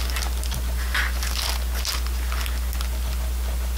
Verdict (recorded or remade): recorded